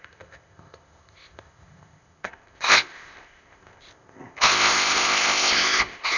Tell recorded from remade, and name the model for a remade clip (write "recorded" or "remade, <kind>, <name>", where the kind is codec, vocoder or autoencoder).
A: remade, codec, ZipCodec